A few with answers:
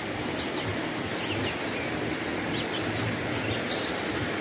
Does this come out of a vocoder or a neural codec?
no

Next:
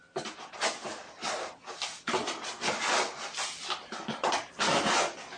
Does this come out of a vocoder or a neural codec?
no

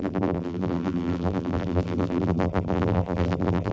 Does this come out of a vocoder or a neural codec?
yes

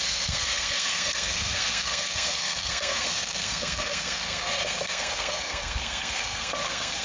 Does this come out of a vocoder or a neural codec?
yes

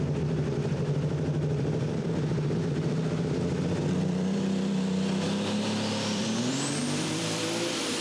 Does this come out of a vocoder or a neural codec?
yes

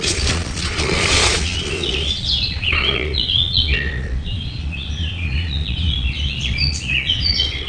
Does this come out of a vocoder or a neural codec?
yes